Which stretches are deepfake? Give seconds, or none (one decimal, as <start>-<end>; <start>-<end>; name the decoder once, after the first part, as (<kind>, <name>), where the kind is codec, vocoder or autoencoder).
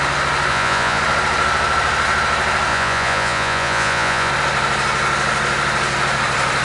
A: 0.5-1.0 (vocoder, Vocos); 2.7-4.3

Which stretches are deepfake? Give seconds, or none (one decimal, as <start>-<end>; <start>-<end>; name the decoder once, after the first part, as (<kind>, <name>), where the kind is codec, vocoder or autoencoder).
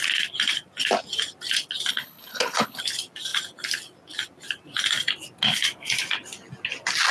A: 1.9-2.8 (codec, HILCodec)